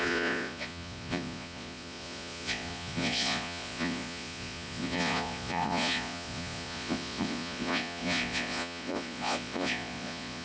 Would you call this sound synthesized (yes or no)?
yes